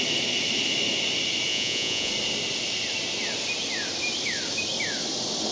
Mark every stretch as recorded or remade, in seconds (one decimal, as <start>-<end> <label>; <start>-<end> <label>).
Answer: 0.0-1.5 recorded; 1.5-2.1 remade; 2.1-5.5 recorded

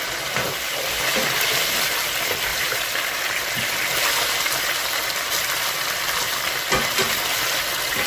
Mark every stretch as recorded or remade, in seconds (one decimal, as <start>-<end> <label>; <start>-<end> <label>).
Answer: 0.0-2.5 recorded; 2.5-3.2 remade; 3.2-8.1 recorded

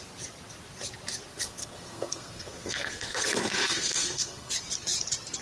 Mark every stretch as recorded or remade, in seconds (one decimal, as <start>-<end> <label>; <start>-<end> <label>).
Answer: 0.0-1.3 recorded; 1.3-4.5 remade; 4.5-5.4 recorded

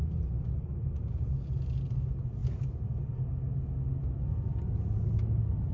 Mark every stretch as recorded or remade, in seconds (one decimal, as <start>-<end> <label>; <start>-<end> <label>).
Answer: 0.0-5.7 recorded

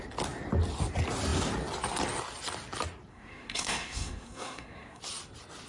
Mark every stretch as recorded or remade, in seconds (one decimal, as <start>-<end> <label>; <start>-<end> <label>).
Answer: 0.0-3.1 recorded; 3.1-5.0 remade; 5.0-5.7 recorded

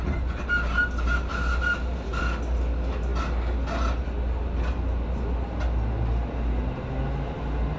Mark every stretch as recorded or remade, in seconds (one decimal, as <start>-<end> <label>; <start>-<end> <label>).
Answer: 0.0-1.3 recorded; 1.3-2.2 remade; 2.2-7.8 recorded

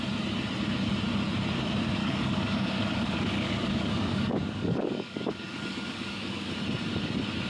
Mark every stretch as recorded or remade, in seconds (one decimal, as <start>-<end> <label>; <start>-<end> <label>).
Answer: 0.0-2.0 recorded; 2.0-6.5 remade; 6.5-7.5 recorded